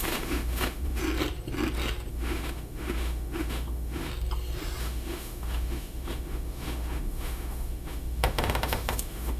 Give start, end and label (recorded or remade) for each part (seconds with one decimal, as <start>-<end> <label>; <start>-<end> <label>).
0.0-1.0 remade; 1.0-2.1 recorded; 2.1-4.1 remade; 4.1-4.8 recorded; 4.8-9.4 remade